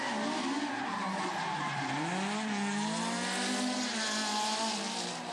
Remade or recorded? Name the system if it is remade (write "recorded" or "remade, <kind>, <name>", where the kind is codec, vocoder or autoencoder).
recorded